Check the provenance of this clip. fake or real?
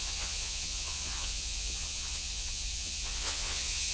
fake